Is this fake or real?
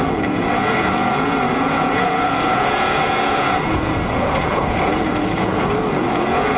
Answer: fake